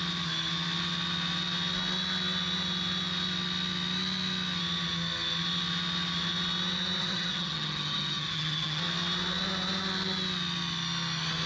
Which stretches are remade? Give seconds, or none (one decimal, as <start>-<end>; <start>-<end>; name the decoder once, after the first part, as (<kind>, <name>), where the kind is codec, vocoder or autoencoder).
7.0-8.8 (vocoder, HiFi-GAN)